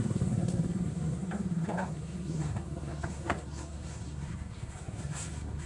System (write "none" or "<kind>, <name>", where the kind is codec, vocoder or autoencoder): codec, SNAC